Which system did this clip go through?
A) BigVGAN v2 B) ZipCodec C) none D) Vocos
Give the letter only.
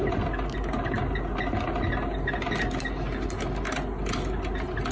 C